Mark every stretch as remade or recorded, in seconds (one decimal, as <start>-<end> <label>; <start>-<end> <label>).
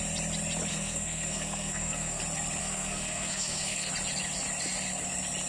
0.0-0.7 recorded; 0.7-2.2 remade; 2.2-2.6 recorded; 2.6-3.9 remade; 3.9-5.5 recorded